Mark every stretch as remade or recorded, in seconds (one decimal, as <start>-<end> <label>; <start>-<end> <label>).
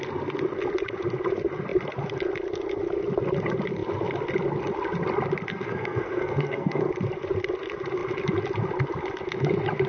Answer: 0.0-5.5 recorded; 5.5-6.9 remade; 6.9-9.9 recorded